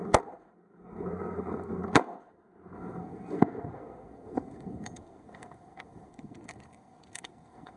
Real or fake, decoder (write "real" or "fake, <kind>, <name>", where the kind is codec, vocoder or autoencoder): fake, codec, SNAC